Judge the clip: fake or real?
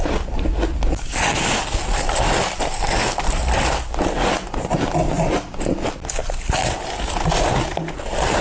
real